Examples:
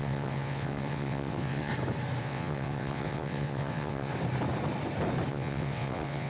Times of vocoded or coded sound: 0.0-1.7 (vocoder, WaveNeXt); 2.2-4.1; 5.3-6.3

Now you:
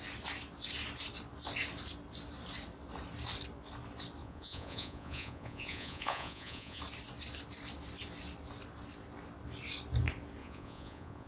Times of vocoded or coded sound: 4.2-6.8 (vocoder, Vocos); 10.4-11.3